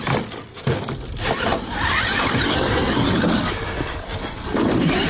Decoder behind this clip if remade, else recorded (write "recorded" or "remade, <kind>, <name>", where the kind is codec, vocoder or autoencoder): recorded